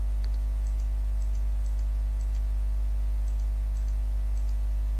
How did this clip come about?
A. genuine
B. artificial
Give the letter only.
A